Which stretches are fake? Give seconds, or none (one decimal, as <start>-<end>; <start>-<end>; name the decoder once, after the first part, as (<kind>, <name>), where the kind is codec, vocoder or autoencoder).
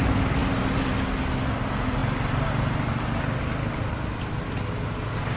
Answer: none